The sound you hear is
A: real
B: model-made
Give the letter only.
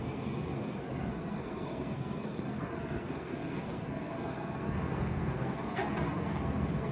B